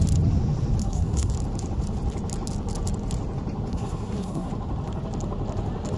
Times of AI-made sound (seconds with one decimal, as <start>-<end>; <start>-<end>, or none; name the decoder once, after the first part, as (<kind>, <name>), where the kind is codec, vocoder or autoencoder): 0.8-1.3 (codec, SNAC); 3.7-4.5